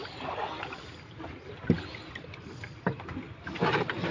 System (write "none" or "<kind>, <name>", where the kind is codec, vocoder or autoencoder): none